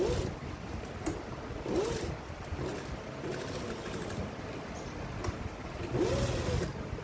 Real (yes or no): yes